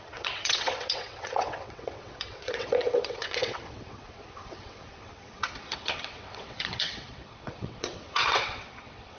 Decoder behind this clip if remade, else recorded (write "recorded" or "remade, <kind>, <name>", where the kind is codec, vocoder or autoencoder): remade, vocoder, WaveNeXt